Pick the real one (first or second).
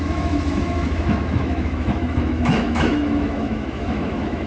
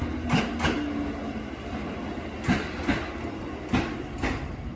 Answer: second